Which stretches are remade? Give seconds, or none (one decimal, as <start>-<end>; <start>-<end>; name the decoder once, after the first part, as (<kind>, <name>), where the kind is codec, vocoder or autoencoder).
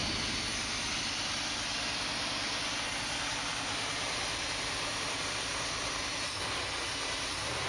none